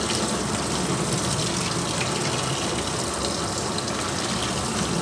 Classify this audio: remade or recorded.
recorded